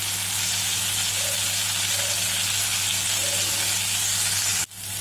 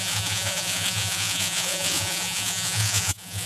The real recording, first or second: first